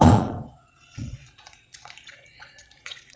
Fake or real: fake